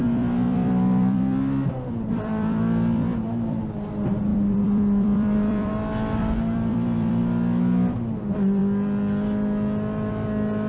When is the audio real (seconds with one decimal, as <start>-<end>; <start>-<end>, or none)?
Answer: 3.6-4.3; 5.7-6.2; 7.2-10.7

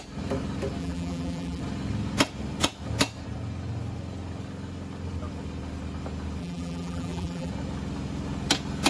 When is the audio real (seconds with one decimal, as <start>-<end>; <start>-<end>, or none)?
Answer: 0.0-0.8; 1.6-6.4; 7.5-8.9

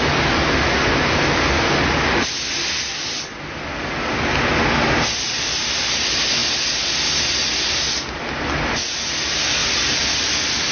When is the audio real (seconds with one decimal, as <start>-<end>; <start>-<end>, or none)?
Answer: 0.0-9.6

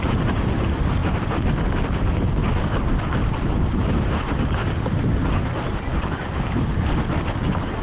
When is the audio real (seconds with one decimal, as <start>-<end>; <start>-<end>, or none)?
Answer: 0.0-2.4; 4.3-6.2; 6.9-7.8

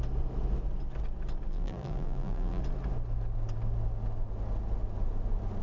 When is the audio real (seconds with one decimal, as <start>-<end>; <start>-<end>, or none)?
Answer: 0.0-1.5; 2.6-5.6